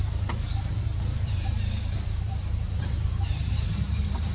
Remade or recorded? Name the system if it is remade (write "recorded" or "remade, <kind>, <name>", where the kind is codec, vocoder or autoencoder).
remade, vocoder, BigVGAN v2